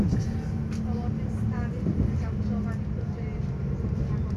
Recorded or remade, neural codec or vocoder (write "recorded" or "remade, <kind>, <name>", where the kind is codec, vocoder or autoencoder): recorded